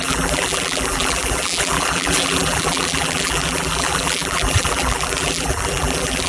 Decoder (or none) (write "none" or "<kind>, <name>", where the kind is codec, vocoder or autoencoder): vocoder, BigVGAN v2